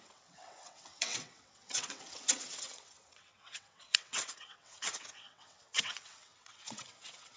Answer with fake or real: fake